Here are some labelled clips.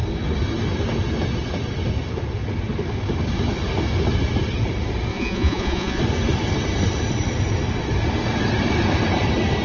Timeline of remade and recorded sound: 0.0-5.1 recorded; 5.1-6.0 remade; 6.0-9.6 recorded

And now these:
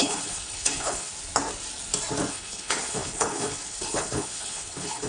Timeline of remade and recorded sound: 0.0-1.1 remade; 1.1-2.3 recorded; 2.3-5.1 remade

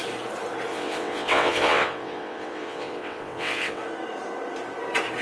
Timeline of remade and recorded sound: 0.0-0.7 recorded; 0.7-3.8 remade; 3.8-5.2 recorded